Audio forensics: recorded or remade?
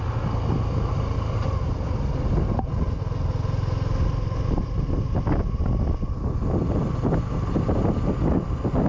recorded